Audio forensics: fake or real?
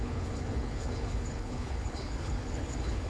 fake